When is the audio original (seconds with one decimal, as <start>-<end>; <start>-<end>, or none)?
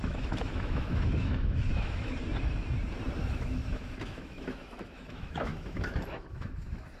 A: 2.1-3.2